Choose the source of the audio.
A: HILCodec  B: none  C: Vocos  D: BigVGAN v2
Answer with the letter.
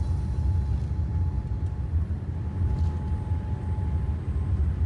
B